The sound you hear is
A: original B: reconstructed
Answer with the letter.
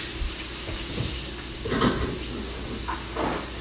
A